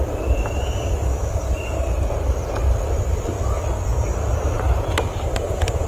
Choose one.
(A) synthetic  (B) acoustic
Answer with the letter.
B